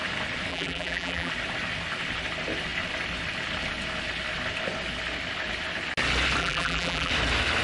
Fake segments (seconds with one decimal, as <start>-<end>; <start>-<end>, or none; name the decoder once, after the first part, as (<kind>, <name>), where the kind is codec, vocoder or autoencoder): 0.5-1.3 (vocoder, BigVGAN v2); 6.4-7.1